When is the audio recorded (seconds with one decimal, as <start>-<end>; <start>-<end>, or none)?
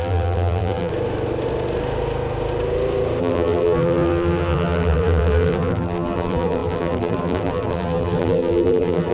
0.9-3.2